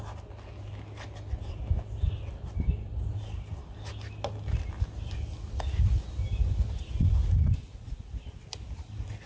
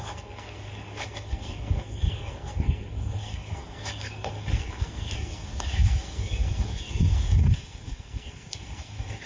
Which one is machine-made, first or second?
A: second